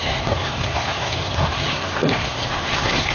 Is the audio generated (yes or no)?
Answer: yes